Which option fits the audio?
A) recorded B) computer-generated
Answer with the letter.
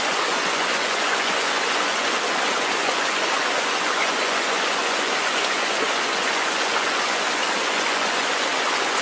B